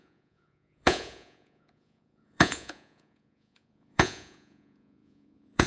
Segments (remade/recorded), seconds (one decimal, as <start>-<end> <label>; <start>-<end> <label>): 0.0-5.7 remade